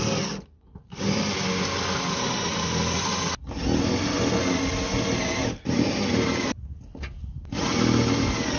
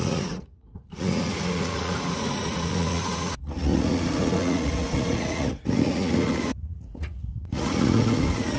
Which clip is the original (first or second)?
first